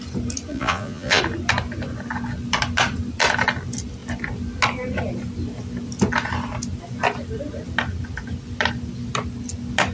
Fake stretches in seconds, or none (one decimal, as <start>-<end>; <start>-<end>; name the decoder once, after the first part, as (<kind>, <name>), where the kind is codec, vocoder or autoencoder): 0.5-1.2 (vocoder, Vocos)